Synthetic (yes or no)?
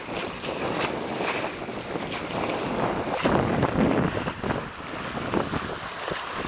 no